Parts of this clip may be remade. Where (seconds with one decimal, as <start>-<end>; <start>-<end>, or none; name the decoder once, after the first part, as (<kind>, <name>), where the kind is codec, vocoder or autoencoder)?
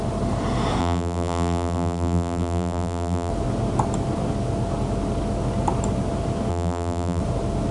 0.8-3.3 (vocoder, BigVGAN v2); 6.5-7.2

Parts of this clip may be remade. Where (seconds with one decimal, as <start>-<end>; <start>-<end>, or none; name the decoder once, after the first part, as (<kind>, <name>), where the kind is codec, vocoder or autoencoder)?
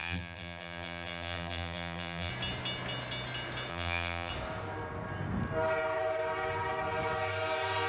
0.0-2.3 (vocoder, BigVGAN v2); 3.7-4.3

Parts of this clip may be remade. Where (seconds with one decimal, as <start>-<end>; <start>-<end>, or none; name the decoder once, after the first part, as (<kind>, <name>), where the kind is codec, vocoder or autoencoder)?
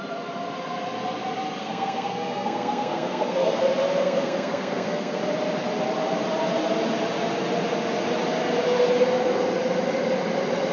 1.6-3.6 (codec, SNAC); 4.0-5.2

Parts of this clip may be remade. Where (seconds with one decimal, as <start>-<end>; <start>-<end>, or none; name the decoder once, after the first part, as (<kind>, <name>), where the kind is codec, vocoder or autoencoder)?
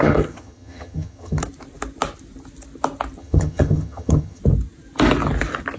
0.0-1.4 (vocoder, HiFi-GAN); 3.2-4.4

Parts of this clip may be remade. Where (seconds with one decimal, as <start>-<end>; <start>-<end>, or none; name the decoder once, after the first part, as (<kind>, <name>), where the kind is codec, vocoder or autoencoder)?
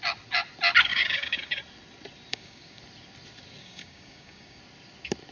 0.9-1.6 (codec, DAC); 2.3-2.8; 3.6-4.6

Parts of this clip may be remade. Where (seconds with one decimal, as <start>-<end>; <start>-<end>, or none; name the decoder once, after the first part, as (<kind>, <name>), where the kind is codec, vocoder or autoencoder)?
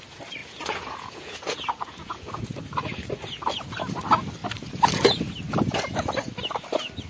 0.4-2.6 (vocoder, Vocos)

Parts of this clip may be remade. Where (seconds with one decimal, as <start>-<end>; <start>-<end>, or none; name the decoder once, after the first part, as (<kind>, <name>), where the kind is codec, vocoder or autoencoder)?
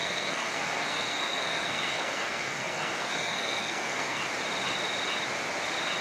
0.0-4.2 (codec, SNAC)